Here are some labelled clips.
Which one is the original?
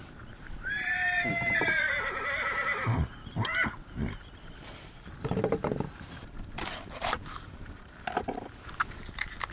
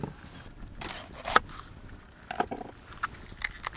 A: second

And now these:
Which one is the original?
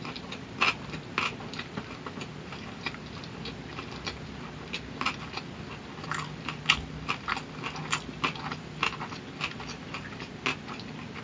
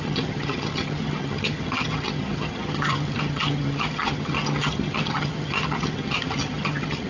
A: first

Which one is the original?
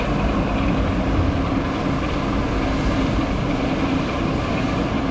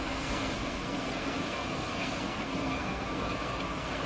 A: first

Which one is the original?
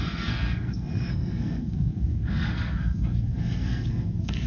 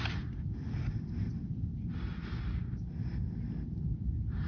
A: second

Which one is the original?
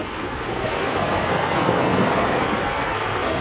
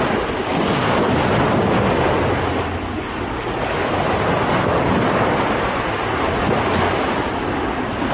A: second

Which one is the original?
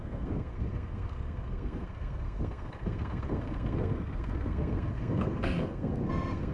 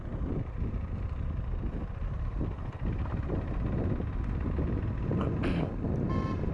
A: second